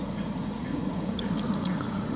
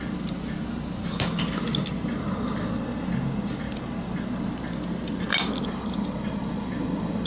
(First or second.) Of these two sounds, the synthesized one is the first